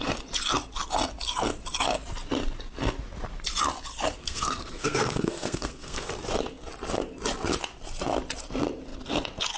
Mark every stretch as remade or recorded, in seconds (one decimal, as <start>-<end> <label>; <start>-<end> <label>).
0.0-4.2 recorded; 4.2-6.1 remade; 6.1-9.6 recorded